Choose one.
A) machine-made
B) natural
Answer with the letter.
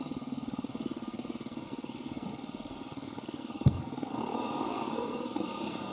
A